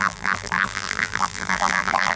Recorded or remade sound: remade